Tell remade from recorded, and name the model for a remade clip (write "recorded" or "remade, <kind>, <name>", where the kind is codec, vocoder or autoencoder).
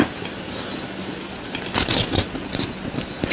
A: recorded